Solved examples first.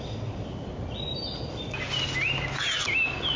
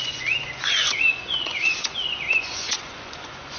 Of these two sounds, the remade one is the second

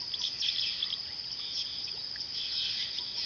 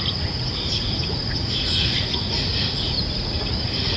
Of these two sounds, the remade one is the second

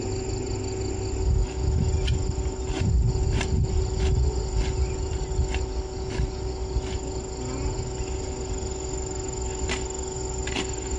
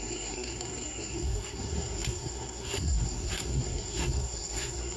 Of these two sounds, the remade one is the second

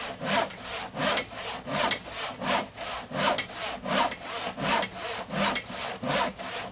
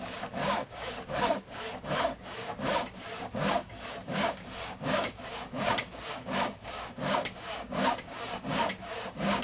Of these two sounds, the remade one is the second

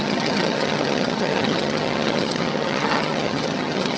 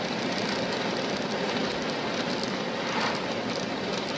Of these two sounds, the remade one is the first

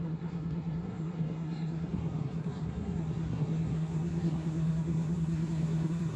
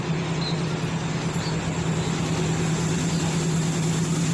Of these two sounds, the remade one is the first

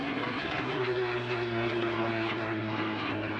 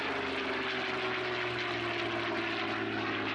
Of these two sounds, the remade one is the first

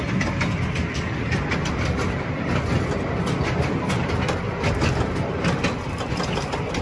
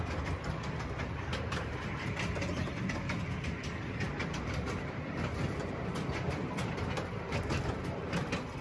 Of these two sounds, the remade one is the second